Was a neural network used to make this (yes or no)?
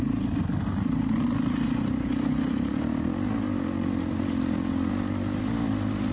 no